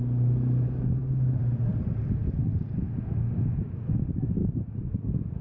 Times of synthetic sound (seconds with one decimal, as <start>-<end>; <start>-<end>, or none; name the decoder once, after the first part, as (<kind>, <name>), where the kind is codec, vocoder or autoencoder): 1.0-2.8 (vocoder, BigVGAN v2); 4.4-5.4